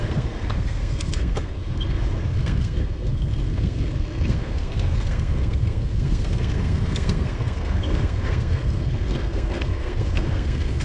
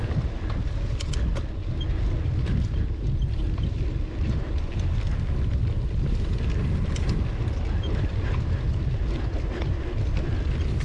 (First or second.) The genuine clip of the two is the second